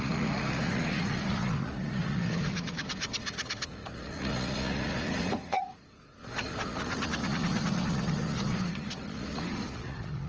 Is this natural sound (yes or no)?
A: no